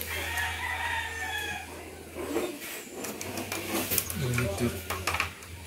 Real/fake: real